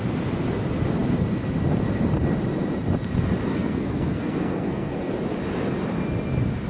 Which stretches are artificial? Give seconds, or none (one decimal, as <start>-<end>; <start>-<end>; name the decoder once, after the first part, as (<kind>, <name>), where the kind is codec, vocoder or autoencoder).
3.5-5.1 (codec, SNAC)